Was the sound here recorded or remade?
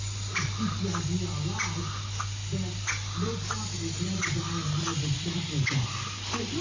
recorded